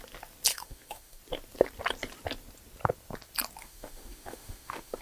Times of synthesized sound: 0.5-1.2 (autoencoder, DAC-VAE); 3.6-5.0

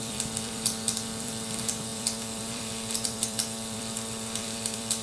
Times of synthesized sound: 0.0-5.0 (vocoder, BigVGAN v2)

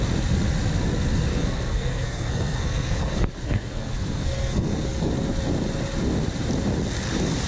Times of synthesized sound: 1.3-5.1 (codec, SNAC)

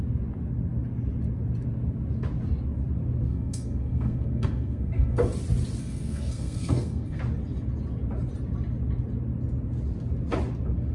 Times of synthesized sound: 3.3-5.2 (codec, SNAC); 5.8-7.2

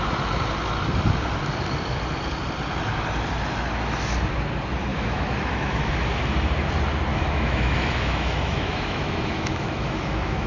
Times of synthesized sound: 4.9-5.9 (autoencoder, DAC-VAE); 7.1-10.5

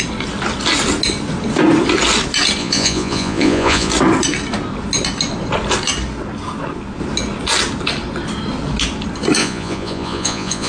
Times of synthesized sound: 2.6-3.9 (vocoder, Vocos); 9.4-10.7